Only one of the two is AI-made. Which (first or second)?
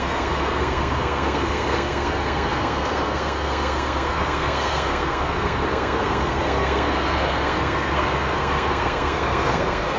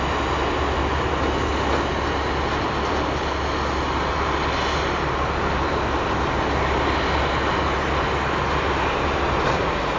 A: first